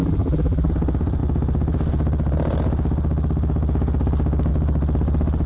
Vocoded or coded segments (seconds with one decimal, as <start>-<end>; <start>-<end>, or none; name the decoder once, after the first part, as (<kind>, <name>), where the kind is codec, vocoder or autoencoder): 0.0-0.7 (vocoder, BigVGAN v2)